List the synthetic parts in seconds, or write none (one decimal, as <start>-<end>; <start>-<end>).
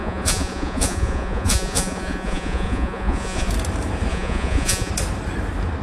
0.0-3.5; 4.1-4.9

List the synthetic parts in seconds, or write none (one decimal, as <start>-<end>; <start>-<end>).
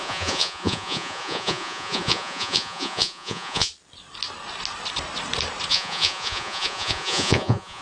0.0-3.7; 5.7-7.8